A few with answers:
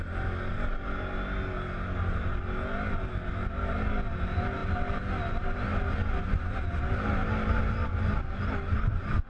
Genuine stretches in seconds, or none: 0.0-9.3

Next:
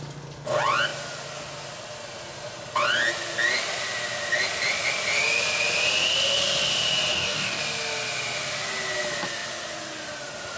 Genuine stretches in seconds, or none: 0.0-7.1; 7.6-10.6

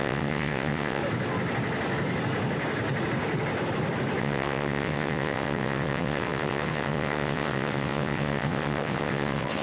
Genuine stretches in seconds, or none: 1.0-4.2

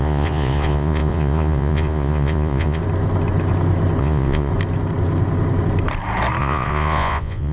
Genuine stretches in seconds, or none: 2.8-4.0; 4.5-6.4

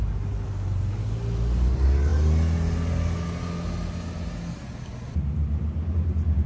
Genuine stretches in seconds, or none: 0.0-6.5